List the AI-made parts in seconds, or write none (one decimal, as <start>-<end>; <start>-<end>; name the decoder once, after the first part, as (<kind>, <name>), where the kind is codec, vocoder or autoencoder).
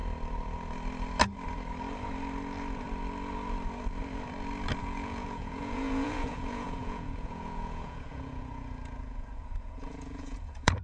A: 4.8-10.8 (vocoder, Vocos)